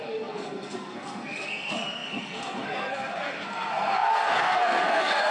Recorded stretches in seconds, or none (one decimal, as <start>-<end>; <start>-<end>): none